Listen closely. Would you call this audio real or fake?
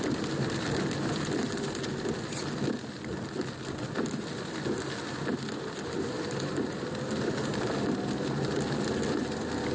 real